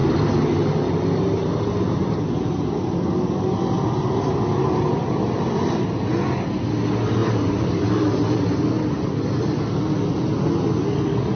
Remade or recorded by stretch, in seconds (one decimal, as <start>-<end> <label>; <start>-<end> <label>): 0.0-4.6 recorded; 4.6-5.7 remade; 5.7-7.2 recorded; 7.2-8.4 remade; 8.4-11.4 recorded